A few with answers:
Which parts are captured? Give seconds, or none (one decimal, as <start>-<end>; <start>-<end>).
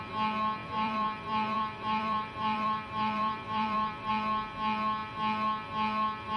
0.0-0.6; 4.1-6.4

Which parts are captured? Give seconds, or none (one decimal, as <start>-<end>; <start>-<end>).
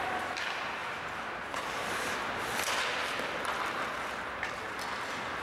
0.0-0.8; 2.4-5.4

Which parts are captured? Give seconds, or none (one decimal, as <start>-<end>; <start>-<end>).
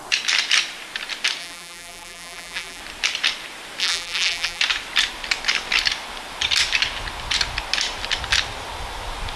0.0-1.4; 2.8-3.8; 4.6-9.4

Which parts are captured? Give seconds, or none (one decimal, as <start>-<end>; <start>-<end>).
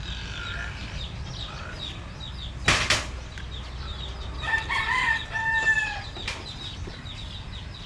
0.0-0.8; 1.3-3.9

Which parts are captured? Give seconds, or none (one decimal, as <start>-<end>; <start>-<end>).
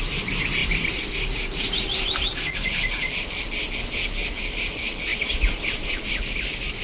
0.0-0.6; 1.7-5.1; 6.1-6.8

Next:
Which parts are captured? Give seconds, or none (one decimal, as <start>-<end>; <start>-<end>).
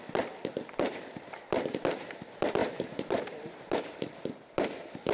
0.0-2.6; 4.0-5.1